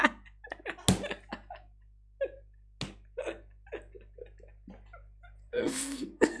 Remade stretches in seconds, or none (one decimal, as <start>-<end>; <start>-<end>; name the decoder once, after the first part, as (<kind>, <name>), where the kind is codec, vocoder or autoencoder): 5.5-6.4 (codec, SNAC)